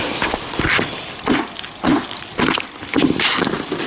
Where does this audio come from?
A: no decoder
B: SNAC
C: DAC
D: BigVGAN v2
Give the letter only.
A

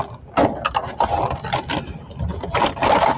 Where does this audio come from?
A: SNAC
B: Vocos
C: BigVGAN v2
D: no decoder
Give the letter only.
D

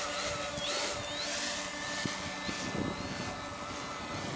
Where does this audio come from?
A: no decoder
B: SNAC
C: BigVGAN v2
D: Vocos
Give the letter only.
A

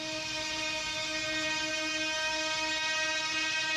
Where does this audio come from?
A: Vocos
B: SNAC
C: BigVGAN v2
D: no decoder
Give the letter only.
D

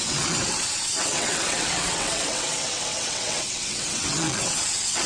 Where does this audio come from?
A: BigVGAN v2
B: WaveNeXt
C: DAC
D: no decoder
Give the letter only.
B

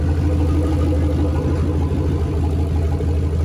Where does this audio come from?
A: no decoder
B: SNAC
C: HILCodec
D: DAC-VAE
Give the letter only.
A